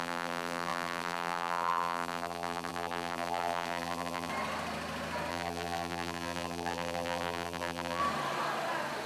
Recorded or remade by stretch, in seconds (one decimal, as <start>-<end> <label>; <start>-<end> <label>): 0.0-4.3 remade; 4.3-5.3 recorded; 5.3-8.0 remade; 8.0-9.1 recorded